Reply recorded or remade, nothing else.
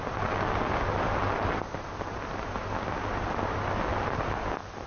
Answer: recorded